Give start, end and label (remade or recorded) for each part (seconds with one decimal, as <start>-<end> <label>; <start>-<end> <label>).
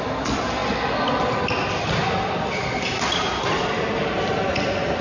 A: 0.0-5.0 recorded